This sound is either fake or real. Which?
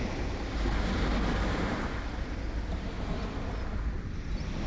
real